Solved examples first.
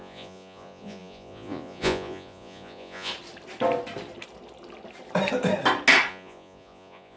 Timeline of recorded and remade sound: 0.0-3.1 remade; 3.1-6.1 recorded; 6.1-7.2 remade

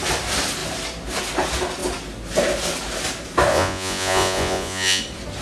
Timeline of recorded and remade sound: 0.0-3.5 recorded; 3.5-5.0 remade; 5.0-5.4 recorded

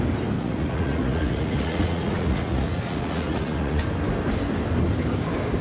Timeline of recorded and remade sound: 0.0-0.4 recorded; 0.4-3.8 remade; 3.8-5.6 recorded

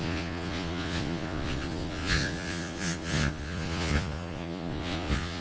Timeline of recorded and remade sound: 0.0-5.4 remade